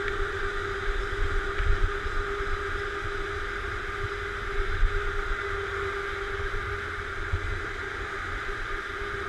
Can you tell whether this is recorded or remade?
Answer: recorded